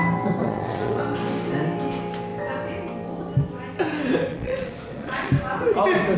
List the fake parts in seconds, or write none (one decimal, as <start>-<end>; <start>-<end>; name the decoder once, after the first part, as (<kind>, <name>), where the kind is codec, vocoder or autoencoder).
0.4-1.0 (vocoder, Vocos); 4.3-5.3